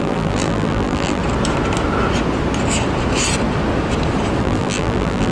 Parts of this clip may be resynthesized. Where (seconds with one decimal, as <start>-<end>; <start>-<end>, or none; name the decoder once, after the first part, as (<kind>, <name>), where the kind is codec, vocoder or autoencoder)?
0.0-1.2 (vocoder, BigVGAN v2); 4.4-5.3